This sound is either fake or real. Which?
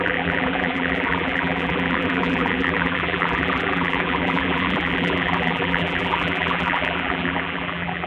fake